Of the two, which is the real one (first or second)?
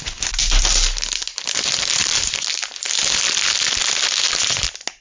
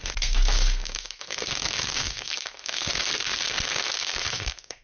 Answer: first